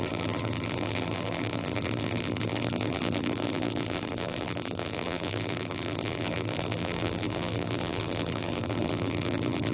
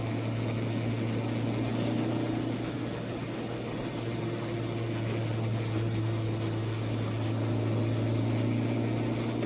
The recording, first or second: second